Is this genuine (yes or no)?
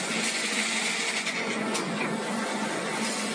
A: no